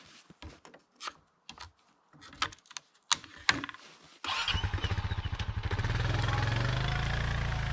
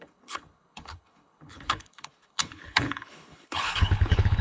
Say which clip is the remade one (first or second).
second